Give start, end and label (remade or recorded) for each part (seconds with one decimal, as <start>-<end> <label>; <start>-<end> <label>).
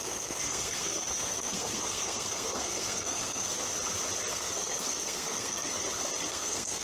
0.0-3.6 remade; 3.6-4.3 recorded; 4.3-5.8 remade; 5.8-6.3 recorded; 6.3-6.8 remade